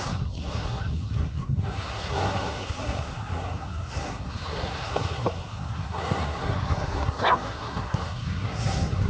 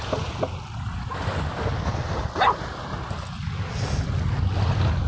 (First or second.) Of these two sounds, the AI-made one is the first